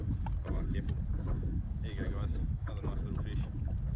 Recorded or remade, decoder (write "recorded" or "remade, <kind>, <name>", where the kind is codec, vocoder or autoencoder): recorded